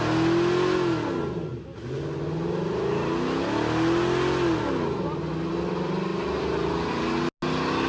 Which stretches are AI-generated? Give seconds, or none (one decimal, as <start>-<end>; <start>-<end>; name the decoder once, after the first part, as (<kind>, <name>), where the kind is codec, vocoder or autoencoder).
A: none